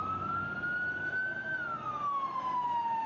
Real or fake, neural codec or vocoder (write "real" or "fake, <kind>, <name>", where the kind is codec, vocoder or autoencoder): real